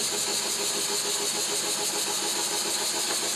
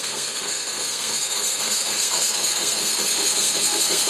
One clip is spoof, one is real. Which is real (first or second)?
first